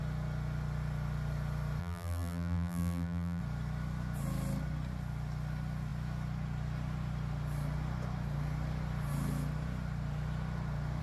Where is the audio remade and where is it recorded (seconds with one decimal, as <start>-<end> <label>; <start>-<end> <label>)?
0.0-1.8 recorded; 1.8-3.4 remade; 3.4-11.0 recorded